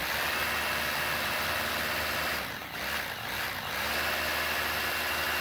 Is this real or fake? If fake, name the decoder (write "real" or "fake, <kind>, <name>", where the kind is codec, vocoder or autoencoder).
real